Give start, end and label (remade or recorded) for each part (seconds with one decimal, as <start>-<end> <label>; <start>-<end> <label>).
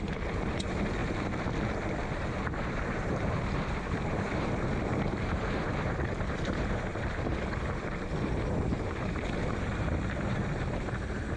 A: 0.0-11.4 remade